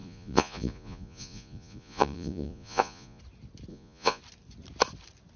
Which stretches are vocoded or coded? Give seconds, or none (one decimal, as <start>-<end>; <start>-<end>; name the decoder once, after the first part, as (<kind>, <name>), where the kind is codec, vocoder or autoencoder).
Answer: 0.0-3.2 (vocoder, Vocos); 3.7-4.2